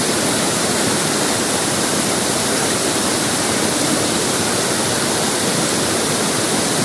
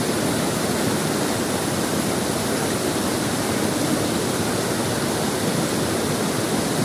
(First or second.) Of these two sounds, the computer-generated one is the first